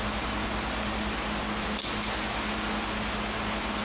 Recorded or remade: recorded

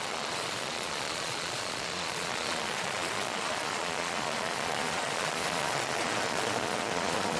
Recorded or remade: remade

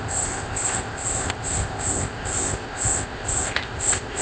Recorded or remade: remade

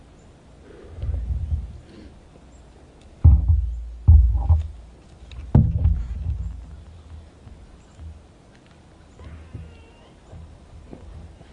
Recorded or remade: recorded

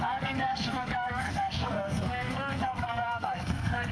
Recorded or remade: remade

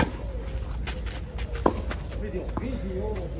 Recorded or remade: recorded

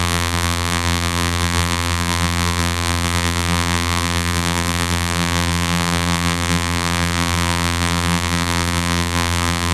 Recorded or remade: remade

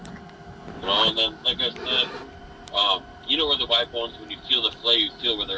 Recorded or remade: recorded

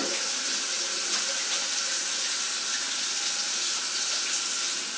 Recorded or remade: recorded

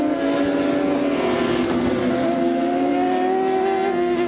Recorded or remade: recorded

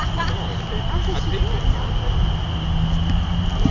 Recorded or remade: recorded